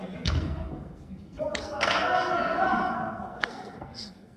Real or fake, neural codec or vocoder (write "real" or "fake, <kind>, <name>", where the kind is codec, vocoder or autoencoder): fake, codec, SNAC